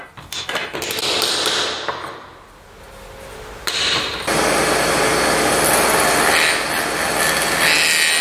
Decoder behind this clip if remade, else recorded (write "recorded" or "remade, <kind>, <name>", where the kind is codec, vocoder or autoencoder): recorded